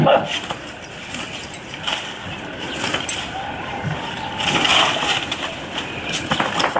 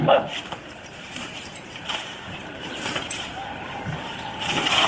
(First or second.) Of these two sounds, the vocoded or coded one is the second